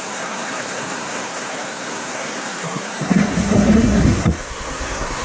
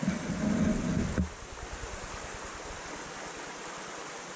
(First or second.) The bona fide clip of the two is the second